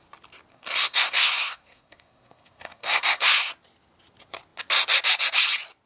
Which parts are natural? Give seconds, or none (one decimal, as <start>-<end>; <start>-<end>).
0.0-0.5; 3.5-5.9